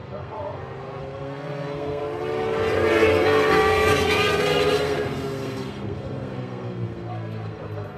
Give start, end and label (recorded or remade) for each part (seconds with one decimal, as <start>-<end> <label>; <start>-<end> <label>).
0.0-0.6 remade; 0.6-1.0 recorded; 1.0-2.0 remade; 2.0-3.1 recorded; 3.1-8.0 remade